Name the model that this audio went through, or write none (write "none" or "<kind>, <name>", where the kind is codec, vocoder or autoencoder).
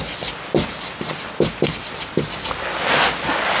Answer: none